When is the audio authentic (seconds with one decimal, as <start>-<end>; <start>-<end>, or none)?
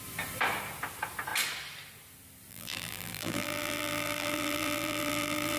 0.0-2.5